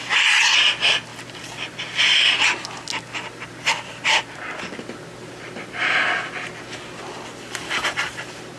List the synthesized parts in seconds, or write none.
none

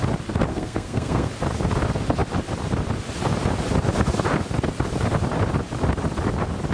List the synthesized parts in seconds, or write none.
0.5-1.3 (codec, SNAC)